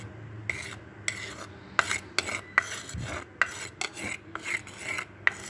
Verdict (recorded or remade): recorded